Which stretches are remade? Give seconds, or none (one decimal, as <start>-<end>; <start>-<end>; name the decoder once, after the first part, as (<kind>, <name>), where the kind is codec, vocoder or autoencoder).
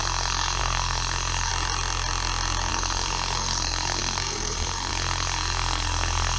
0.0-1.5 (codec, SNAC); 2.7-6.4